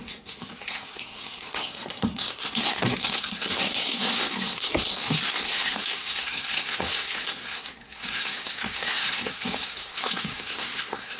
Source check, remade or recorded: remade